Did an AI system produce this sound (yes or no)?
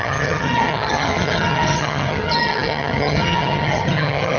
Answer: yes